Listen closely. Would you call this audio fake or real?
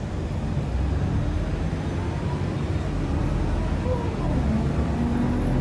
real